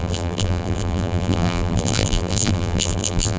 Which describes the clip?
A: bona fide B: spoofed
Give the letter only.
B